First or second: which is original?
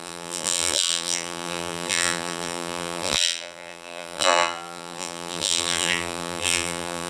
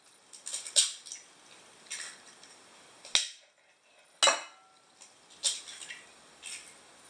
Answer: second